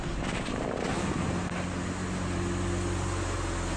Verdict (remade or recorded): recorded